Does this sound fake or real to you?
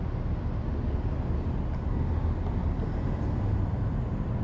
real